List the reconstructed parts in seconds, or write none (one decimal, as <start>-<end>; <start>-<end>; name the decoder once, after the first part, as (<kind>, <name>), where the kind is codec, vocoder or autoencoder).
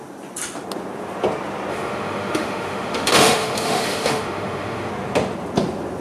1.7-4.9 (autoencoder, DAC-VAE)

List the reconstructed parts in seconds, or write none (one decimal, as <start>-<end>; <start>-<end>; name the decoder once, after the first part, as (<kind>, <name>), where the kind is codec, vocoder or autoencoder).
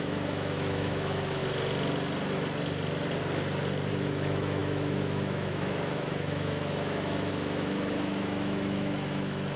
0.0-1.4 (autoencoder, DAC-VAE); 3.9-9.6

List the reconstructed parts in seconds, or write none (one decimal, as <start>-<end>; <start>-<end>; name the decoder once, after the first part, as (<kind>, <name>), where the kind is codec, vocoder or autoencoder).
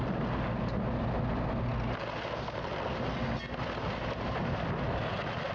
none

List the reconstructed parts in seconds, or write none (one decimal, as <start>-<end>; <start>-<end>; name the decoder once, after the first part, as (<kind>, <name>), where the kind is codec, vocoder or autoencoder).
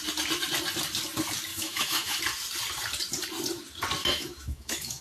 1.5-2.2 (autoencoder, DAC-VAE); 4.0-5.0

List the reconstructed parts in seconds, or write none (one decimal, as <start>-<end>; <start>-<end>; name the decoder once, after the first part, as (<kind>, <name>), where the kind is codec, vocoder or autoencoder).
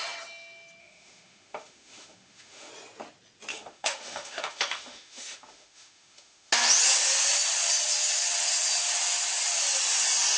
0.8-2.7 (autoencoder, DAC-VAE); 3.5-6.5